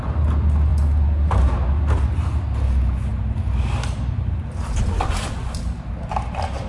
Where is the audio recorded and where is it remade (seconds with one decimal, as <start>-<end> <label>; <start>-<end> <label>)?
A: 0.0-6.7 recorded